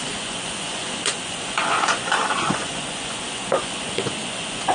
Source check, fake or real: fake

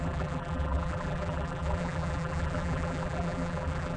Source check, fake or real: fake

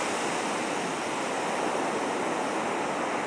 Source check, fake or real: real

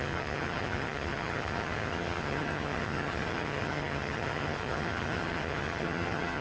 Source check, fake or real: fake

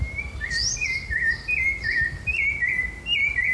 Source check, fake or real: real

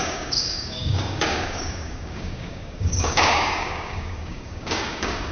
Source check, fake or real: fake